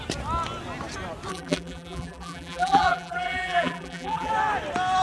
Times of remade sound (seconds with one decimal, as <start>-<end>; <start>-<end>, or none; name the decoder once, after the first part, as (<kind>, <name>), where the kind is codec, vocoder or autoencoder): 1.3-4.3 (vocoder, BigVGAN v2)